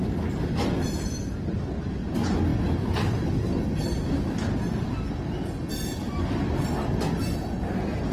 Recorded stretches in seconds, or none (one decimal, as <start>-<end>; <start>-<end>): 0.0-8.1